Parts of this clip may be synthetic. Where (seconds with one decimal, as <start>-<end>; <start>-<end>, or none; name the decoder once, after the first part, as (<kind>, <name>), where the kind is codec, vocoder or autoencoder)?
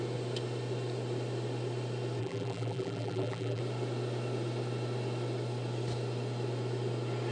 2.2-3.6 (vocoder, BigVGAN v2)